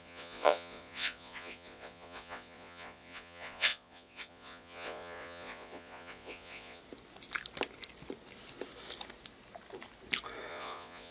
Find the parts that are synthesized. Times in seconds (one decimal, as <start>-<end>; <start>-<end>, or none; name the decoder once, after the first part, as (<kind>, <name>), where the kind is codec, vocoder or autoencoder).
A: 0.0-6.8 (vocoder, Vocos); 10.5-11.1